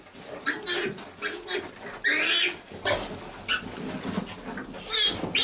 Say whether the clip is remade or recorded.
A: recorded